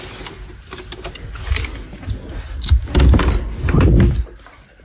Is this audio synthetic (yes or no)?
no